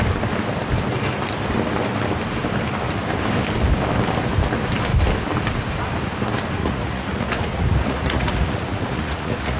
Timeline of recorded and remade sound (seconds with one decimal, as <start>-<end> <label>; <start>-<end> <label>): 0.0-6.6 recorded; 6.6-9.6 remade